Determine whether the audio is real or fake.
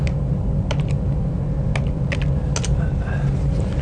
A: real